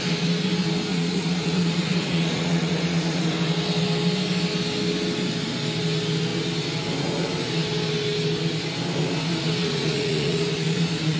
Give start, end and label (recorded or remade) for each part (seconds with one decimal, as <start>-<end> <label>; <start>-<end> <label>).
0.0-0.9 recorded; 0.9-3.2 remade; 3.2-9.6 recorded; 9.6-11.2 remade